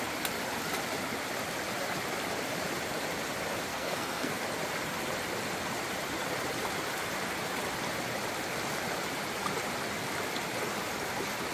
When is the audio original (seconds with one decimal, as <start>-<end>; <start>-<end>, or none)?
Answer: 0.0-3.7; 4.4-11.5

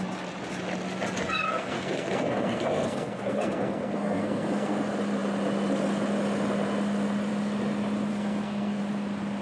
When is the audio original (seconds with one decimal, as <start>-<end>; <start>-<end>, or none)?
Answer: 0.0-1.2; 4.8-8.1; 8.8-9.4

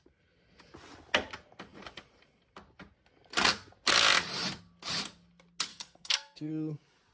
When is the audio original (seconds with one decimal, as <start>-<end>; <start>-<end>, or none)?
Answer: 0.0-5.7; 6.5-7.1

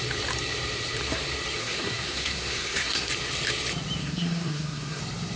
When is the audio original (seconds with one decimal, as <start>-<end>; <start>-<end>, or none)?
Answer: 0.0-1.6; 3.1-4.0; 5.0-5.4

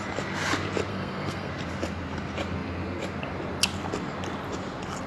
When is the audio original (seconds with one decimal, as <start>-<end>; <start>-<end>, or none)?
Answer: 0.0-0.9; 1.5-5.1

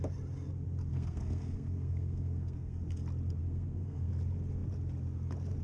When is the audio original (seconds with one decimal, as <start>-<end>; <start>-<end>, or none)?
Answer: 0.0-0.9; 2.8-3.4; 4.1-5.6